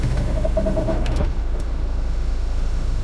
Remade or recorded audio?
remade